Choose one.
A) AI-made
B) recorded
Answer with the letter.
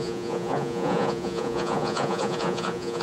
A